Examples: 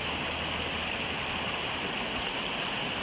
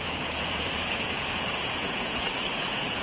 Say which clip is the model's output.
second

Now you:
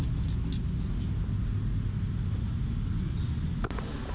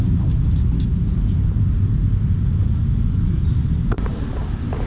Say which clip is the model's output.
second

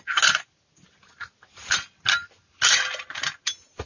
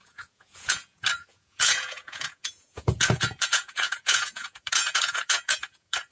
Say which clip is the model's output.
second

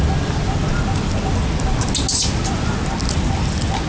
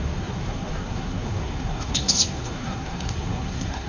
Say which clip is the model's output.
second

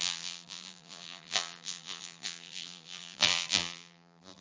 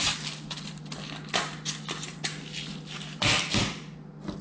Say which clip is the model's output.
first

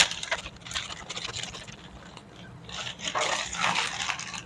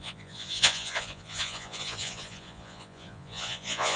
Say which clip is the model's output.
second